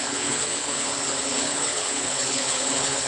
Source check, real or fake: fake